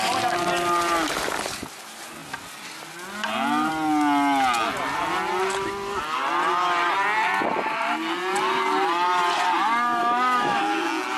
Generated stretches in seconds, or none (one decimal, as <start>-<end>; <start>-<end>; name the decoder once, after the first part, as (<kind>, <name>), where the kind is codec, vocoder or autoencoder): 10.0-10.6 (autoencoder, DAC-VAE)